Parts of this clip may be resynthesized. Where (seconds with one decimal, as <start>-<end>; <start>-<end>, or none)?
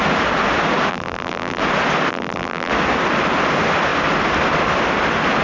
0.9-1.6; 2.1-2.7